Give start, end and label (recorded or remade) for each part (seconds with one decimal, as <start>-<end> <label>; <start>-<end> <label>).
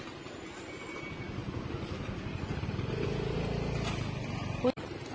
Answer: 0.0-1.4 recorded; 1.4-3.0 remade; 3.0-5.1 recorded